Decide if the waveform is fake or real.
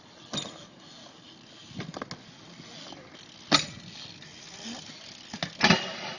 real